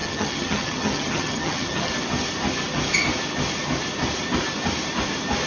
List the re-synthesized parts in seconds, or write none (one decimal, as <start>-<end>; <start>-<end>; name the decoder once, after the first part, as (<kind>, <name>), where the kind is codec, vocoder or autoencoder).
0.0-1.9 (vocoder, HiFi-GAN)